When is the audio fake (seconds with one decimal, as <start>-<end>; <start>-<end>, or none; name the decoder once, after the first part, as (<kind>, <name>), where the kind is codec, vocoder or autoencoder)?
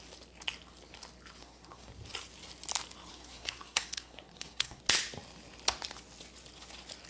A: 1.4-1.9 (codec, SNAC); 3.1-4.8